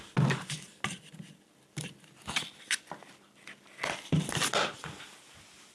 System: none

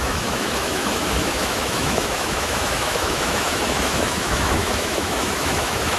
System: autoencoder, DAC-VAE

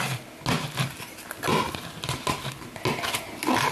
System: none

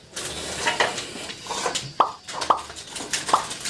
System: none